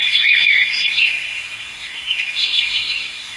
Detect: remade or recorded remade